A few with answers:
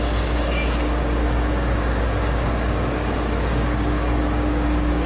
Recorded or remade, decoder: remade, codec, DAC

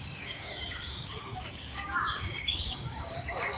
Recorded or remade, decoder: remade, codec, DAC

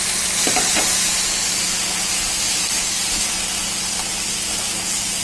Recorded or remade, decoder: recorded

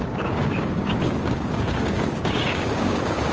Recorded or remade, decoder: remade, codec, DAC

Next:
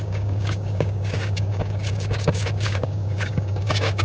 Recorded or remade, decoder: remade, codec, DAC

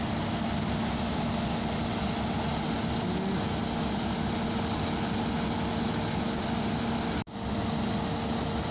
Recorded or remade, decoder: recorded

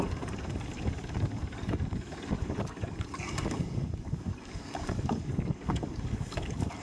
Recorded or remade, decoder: remade, codec, DAC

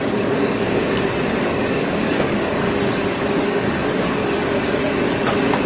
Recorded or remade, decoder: remade, codec, DAC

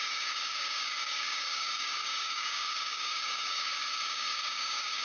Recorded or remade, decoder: remade, codec, DAC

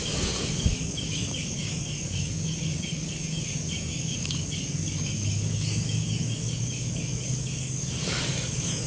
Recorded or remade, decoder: remade, codec, DAC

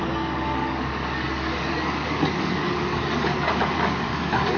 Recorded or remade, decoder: remade, codec, DAC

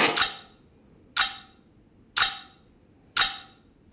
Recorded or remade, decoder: recorded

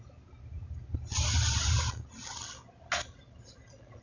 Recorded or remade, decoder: recorded